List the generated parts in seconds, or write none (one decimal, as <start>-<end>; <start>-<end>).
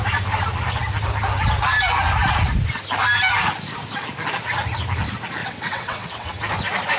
5.4-6.4